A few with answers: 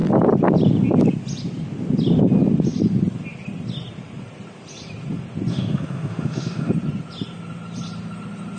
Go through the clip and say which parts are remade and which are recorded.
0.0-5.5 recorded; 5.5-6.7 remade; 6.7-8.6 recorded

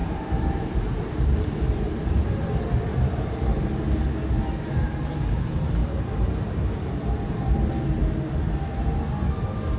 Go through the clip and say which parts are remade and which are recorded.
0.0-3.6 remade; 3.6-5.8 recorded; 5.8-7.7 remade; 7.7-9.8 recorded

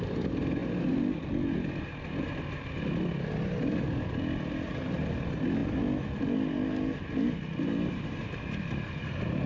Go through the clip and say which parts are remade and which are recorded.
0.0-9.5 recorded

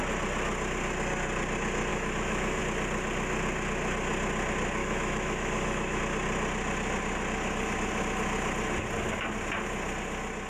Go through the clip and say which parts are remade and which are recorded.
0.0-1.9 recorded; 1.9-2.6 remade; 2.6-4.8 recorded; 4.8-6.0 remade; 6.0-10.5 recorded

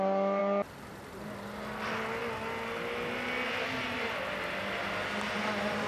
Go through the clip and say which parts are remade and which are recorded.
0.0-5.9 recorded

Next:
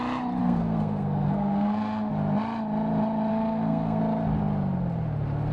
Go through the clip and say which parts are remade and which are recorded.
0.0-0.4 recorded; 0.4-2.1 remade; 2.1-3.3 recorded; 3.3-4.0 remade; 4.0-5.5 recorded

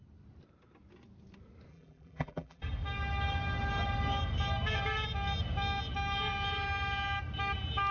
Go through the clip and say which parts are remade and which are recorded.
0.0-1.7 recorded; 1.7-2.6 remade; 2.6-7.9 recorded

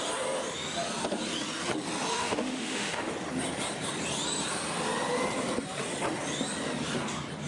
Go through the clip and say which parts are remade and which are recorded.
0.0-2.1 recorded; 2.1-3.1 remade; 3.1-7.5 recorded